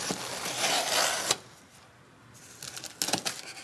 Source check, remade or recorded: recorded